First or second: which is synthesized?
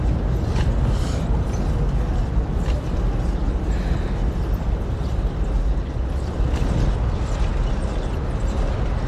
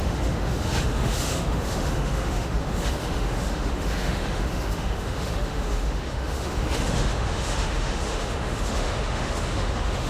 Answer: second